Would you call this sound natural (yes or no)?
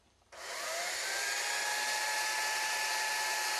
yes